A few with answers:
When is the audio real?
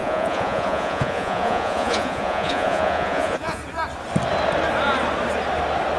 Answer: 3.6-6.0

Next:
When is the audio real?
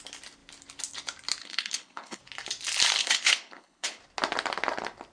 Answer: 0.0-1.4; 2.2-3.0; 4.0-5.1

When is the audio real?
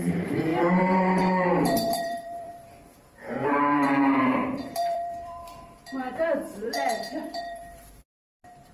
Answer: none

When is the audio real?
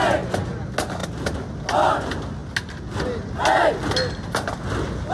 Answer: 0.0-5.1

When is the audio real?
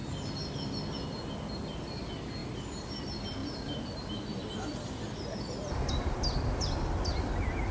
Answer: 0.0-7.7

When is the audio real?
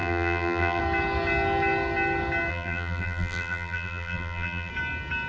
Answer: 0.8-2.5; 4.7-5.3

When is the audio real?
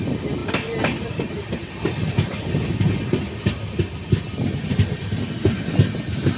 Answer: 0.0-0.4; 2.5-6.4